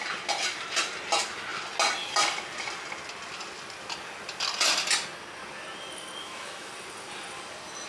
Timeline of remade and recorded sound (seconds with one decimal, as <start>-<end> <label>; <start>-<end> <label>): 0.0-6.2 recorded; 6.2-6.7 remade; 6.7-7.9 recorded